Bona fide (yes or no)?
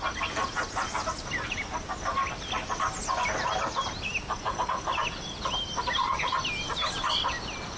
yes